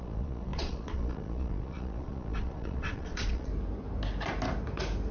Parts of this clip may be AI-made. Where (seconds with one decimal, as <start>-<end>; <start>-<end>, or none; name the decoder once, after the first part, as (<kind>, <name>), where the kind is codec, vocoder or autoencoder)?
0.0-3.5 (vocoder, Vocos)